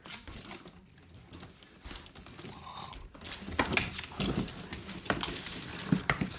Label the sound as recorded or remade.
recorded